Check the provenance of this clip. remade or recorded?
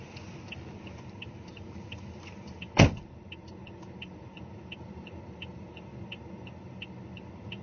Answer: remade